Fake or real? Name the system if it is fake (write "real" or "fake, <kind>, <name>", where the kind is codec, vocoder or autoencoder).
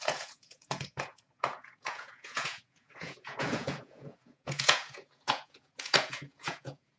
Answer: fake, vocoder, Vocos